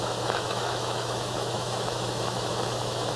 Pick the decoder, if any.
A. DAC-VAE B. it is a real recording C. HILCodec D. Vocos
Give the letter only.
A